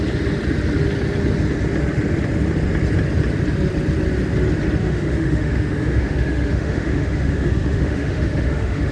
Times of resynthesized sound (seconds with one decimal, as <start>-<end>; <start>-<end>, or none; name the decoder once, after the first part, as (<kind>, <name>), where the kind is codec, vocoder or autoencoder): 4.8-8.9 (autoencoder, DAC-VAE)